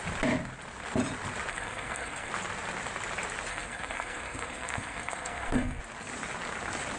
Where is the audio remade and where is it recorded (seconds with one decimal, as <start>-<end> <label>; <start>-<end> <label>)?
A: 0.0-1.5 recorded; 1.5-2.3 remade; 2.3-3.5 recorded; 3.5-5.8 remade; 5.8-7.0 recorded